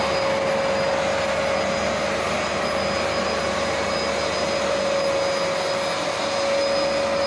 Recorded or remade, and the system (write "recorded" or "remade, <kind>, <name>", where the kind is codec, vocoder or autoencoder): recorded